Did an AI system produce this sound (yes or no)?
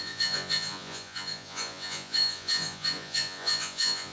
yes